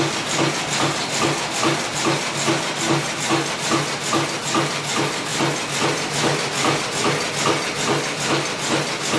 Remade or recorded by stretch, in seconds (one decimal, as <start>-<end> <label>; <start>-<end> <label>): 0.0-9.2 recorded